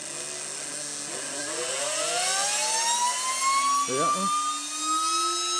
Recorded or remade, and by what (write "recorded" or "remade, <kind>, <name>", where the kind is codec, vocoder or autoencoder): recorded